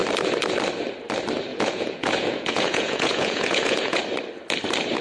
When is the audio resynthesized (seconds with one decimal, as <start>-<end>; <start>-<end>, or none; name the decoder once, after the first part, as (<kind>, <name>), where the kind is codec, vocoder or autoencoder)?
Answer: 1.5-4.0 (vocoder, Vocos)